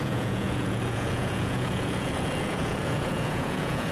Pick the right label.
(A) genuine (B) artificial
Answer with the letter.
B